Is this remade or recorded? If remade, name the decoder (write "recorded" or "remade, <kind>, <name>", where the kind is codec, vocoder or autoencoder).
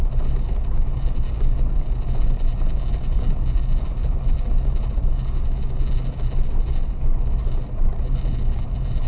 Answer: recorded